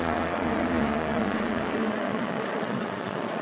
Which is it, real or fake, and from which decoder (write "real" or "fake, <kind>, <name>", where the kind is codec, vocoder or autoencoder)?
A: fake, vocoder, Vocos